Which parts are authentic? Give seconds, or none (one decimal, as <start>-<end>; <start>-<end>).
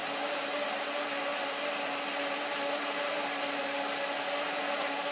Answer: 0.0-5.1